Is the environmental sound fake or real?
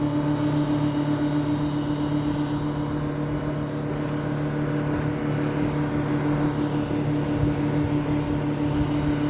real